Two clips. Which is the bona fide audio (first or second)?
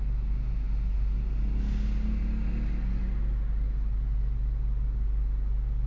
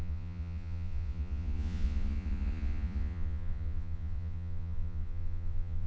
first